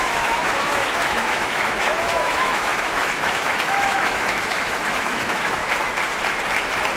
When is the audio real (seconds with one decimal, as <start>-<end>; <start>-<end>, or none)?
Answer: 5.6-7.0